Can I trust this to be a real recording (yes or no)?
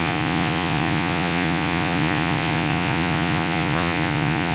no